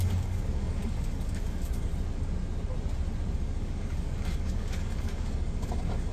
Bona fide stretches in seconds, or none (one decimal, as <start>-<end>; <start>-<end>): 1.9-3.3